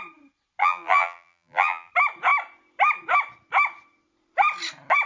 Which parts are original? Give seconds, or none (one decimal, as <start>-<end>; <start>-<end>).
0.0-0.6; 1.9-5.1